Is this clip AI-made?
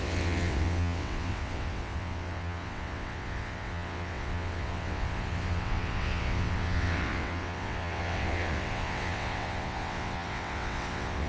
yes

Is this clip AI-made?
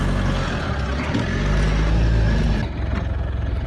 no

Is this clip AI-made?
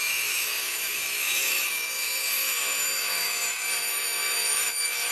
yes